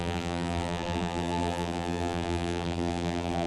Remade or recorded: remade